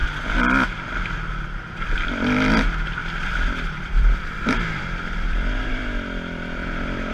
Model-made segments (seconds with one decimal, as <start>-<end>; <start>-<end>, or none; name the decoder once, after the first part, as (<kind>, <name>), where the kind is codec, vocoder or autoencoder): 3.0-7.1 (vocoder, BigVGAN v2)